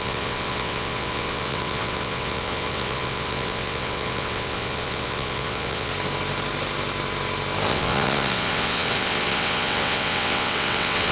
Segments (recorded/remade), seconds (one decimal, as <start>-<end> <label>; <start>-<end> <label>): 0.0-5.9 remade; 5.9-7.7 recorded; 7.7-11.1 remade